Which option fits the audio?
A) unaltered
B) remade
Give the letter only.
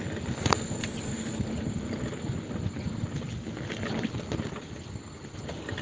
B